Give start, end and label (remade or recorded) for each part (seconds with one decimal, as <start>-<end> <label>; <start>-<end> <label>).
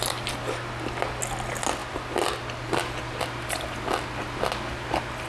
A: 0.0-5.3 recorded